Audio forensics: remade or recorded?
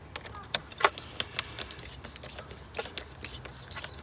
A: recorded